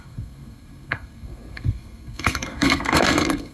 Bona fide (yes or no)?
no